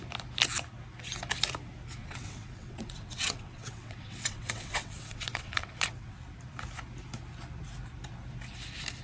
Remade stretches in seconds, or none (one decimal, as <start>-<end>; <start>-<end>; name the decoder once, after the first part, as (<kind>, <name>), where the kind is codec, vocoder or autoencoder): 2.0-6.2 (vocoder, WaveNeXt)